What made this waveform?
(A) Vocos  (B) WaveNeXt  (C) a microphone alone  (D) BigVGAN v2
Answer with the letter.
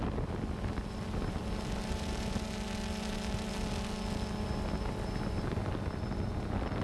C